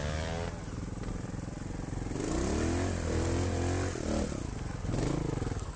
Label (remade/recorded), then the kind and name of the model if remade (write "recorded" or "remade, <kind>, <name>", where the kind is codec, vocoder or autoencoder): recorded